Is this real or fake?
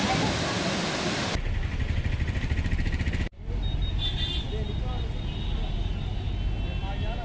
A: real